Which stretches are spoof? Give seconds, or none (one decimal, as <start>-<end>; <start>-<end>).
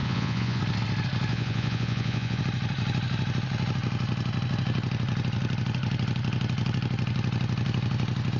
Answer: 0.0-0.6; 1.3-2.4